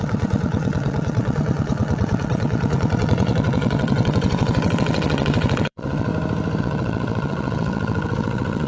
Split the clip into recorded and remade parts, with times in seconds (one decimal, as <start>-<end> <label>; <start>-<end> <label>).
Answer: 0.0-6.1 remade; 6.1-6.6 recorded; 6.6-8.7 remade